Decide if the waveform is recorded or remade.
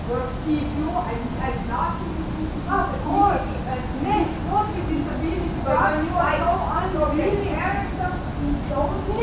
recorded